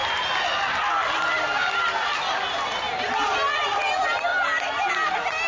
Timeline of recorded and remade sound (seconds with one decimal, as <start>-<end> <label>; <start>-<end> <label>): 0.0-5.5 recorded